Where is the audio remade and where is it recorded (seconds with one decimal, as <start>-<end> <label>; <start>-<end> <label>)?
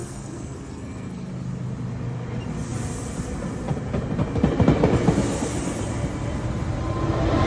0.0-1.3 remade; 1.3-7.5 recorded